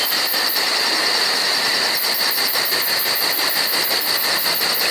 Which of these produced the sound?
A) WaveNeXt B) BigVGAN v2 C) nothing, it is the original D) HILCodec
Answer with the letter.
C